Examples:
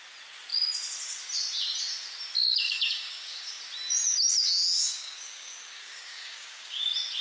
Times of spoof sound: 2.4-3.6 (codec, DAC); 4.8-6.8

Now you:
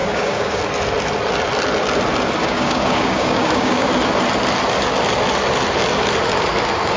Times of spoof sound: 0.0-0.6 (codec, DAC); 2.4-3.9